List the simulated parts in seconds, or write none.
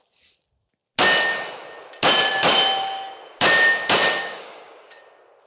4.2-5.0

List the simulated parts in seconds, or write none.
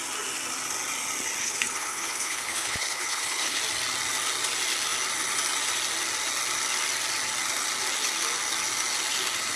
1.4-3.6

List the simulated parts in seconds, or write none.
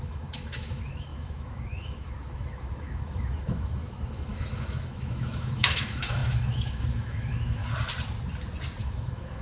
0.0-7.6; 8.8-9.4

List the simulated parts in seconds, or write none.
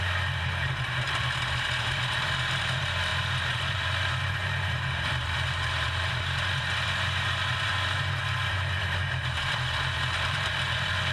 0.0-11.1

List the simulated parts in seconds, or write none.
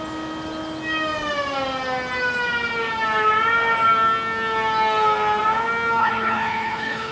6.0-7.1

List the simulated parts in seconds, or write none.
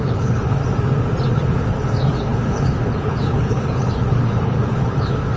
0.0-0.6; 1.3-5.4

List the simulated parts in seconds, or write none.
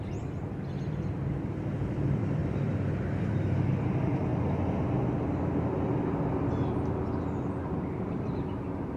0.0-4.3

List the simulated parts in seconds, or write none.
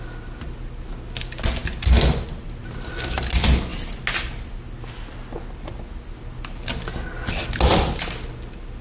none